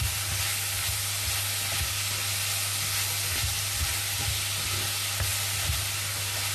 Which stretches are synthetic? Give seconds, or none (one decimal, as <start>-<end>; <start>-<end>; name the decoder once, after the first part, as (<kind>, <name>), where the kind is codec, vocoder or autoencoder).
none